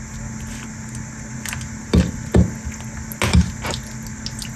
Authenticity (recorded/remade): recorded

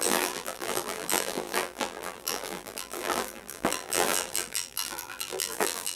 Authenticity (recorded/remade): remade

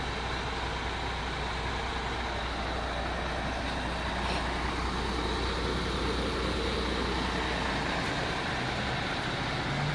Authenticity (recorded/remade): recorded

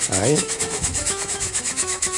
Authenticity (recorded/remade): remade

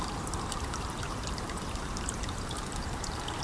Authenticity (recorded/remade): remade